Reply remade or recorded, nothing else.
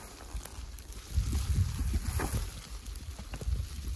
recorded